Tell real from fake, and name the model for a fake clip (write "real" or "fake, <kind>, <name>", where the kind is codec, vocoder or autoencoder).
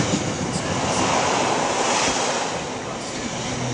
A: real